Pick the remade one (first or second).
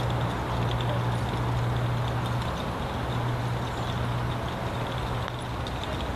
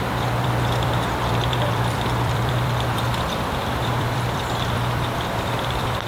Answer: second